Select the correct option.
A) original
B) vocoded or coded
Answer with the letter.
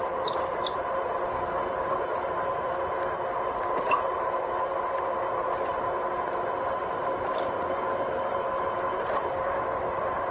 A